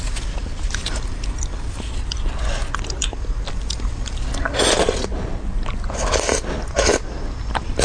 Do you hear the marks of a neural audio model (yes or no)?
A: no